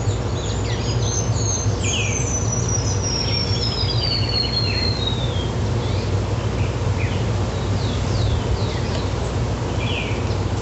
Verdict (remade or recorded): recorded